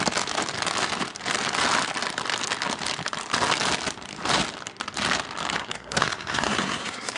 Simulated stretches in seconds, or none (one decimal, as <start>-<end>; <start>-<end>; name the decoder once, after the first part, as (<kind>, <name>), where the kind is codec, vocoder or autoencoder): 5.6-7.2 (codec, SNAC)